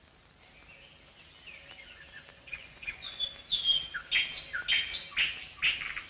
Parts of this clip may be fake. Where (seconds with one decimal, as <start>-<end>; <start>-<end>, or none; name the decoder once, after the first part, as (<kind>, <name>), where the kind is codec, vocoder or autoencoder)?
2.3-3.2 (vocoder, Vocos)